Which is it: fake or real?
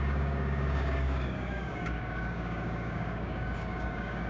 fake